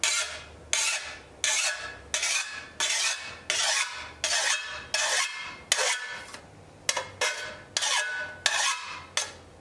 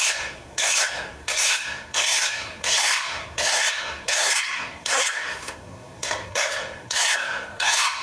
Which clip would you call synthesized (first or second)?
second